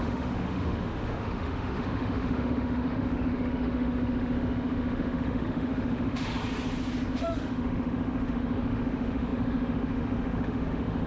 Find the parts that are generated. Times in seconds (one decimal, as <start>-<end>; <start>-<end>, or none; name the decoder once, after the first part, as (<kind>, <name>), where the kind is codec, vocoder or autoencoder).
0.0-6.4 (autoencoder, DAC-VAE); 7.1-11.1